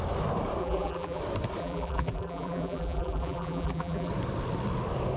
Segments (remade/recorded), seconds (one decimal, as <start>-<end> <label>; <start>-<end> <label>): 0.0-0.6 recorded; 0.6-1.2 remade; 1.2-1.6 recorded; 1.6-4.1 remade; 4.1-5.2 recorded